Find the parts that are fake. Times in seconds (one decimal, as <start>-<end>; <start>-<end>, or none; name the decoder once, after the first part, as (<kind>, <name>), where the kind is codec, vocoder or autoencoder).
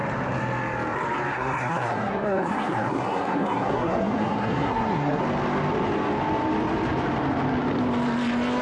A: 1.3-5.2 (codec, SNAC)